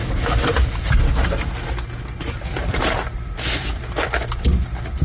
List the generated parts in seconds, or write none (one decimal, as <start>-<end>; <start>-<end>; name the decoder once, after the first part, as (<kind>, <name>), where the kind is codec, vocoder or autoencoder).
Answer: none